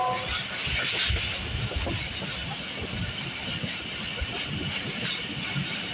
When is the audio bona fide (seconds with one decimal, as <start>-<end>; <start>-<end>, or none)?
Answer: 0.0-5.9